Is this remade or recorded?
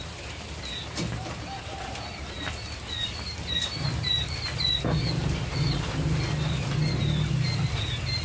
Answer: recorded